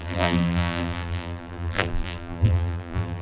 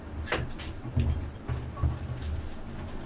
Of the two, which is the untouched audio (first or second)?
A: second